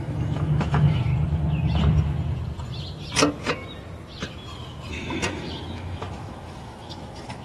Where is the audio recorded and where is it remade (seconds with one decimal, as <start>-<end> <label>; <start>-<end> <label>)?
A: 0.0-1.1 remade; 1.1-4.9 recorded; 4.9-7.4 remade